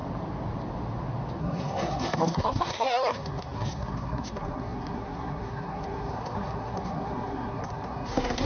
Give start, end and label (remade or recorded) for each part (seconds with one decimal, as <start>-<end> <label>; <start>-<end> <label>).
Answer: 0.0-1.4 recorded; 1.4-8.5 remade